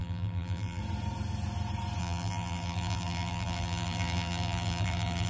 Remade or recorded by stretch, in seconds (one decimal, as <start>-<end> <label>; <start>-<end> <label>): 0.0-0.8 remade; 0.8-2.0 recorded; 2.0-5.3 remade